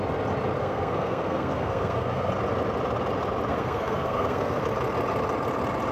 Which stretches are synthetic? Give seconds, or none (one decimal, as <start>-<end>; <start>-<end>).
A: 0.6-2.3; 3.5-4.6